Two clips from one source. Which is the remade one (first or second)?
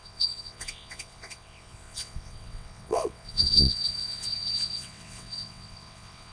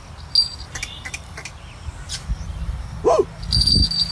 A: first